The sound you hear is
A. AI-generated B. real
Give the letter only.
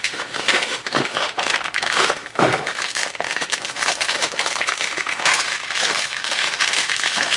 A